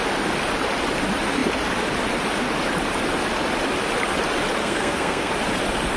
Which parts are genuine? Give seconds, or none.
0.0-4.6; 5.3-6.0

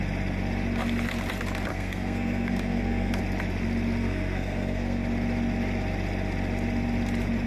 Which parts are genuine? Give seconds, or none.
0.0-1.7; 3.2-4.0; 5.0-7.5

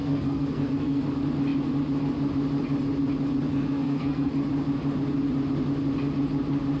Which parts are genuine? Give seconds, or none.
1.0-3.5; 4.3-6.8

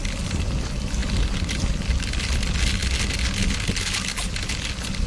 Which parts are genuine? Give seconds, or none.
0.0-5.1

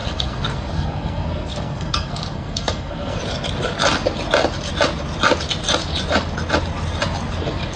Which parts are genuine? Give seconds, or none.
3.2-7.8

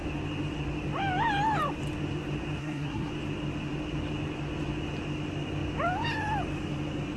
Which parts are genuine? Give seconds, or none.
0.0-2.6; 3.1-7.2

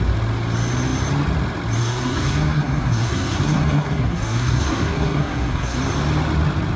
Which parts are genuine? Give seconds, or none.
0.0-1.8; 5.8-6.8

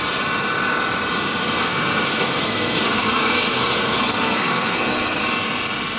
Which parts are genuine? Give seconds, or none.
0.0-1.6; 5.2-6.0